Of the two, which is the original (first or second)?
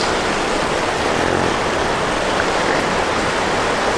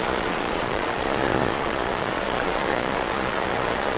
first